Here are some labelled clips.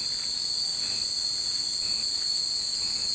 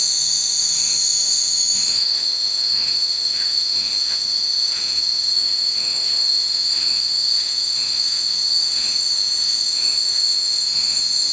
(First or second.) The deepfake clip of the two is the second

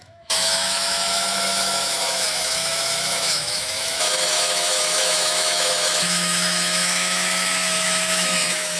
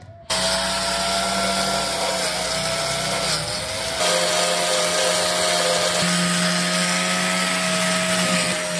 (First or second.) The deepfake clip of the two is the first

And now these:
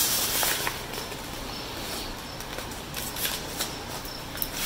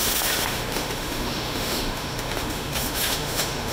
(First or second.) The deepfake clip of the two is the second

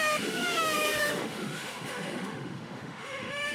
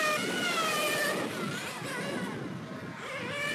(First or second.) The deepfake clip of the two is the first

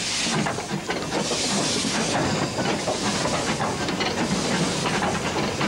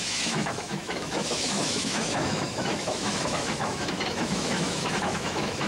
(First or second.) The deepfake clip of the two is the second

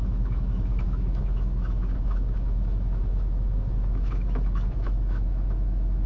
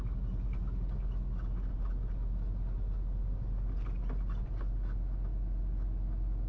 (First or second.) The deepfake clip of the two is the first